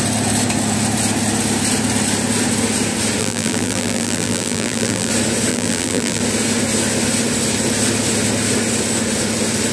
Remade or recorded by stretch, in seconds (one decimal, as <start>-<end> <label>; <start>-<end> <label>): 0.0-3.2 recorded; 3.2-5.1 remade; 5.1-5.5 recorded; 5.5-6.2 remade; 6.2-9.7 recorded